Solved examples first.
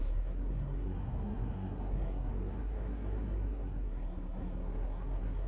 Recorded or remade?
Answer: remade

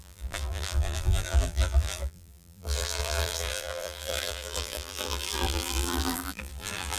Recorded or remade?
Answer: remade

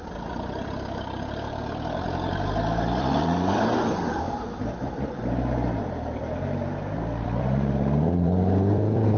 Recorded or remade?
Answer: remade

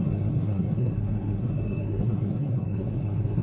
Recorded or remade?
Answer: remade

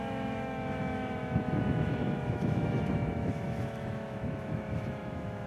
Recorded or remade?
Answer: remade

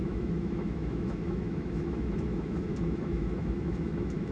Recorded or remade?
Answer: remade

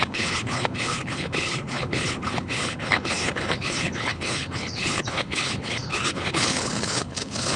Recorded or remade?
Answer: remade